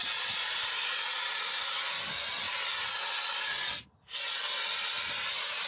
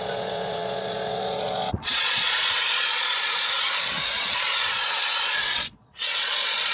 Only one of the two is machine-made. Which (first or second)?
second